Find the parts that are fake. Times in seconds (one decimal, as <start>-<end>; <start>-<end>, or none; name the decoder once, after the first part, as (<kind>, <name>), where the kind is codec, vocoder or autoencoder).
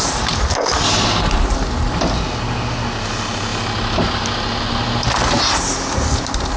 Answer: none